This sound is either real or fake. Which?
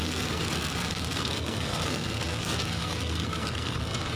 fake